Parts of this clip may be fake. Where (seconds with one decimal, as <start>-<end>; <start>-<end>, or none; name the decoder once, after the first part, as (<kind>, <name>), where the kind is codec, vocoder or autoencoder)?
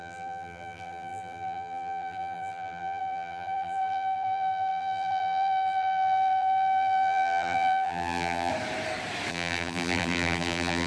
0.0-8.5 (vocoder, BigVGAN v2); 9.3-10.9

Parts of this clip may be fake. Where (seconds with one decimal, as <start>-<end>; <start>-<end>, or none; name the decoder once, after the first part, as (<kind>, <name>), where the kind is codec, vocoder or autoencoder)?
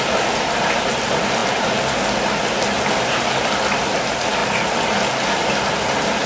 none